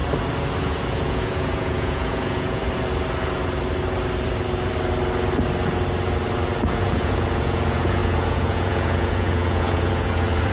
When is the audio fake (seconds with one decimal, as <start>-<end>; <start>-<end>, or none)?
0.6-2.6; 6.7-10.5